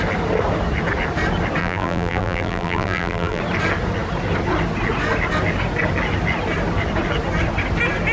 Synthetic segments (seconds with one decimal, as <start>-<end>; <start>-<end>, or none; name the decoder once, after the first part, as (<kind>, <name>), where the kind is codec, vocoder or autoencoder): 1.6-3.4 (vocoder, BigVGAN v2)